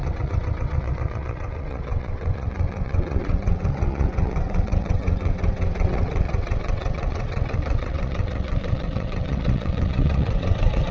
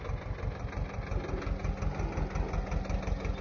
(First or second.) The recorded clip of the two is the second